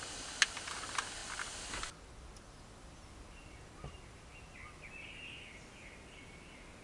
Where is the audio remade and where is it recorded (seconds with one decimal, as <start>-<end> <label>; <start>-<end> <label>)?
0.0-6.8 recorded